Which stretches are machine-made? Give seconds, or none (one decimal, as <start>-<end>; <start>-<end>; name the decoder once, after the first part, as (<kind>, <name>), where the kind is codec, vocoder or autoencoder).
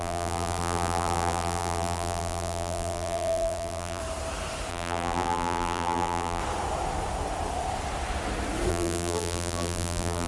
0.0-4.0 (vocoder, BigVGAN v2); 4.7-6.4; 8.7-10.3